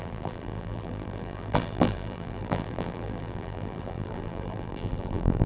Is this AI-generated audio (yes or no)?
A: yes